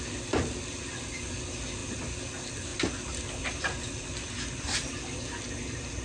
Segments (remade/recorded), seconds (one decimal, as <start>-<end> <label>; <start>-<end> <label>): 0.0-6.0 recorded